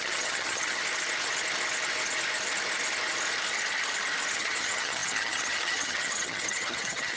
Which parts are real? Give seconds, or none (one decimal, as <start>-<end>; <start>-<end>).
0.8-4.3